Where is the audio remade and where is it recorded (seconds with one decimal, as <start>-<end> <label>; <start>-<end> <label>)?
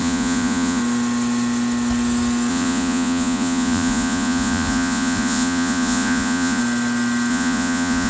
0.0-0.8 remade; 0.8-2.5 recorded; 2.5-6.6 remade; 6.6-7.3 recorded; 7.3-8.1 remade